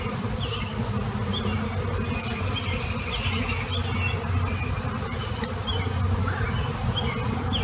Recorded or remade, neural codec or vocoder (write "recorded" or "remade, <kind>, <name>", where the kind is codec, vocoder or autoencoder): recorded